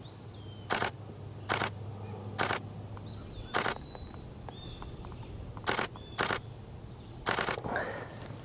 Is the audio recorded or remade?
recorded